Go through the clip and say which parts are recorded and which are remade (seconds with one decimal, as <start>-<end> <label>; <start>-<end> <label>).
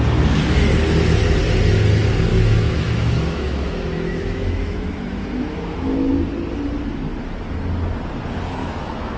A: 0.0-2.3 recorded; 2.3-6.1 remade; 6.1-8.6 recorded; 8.6-9.2 remade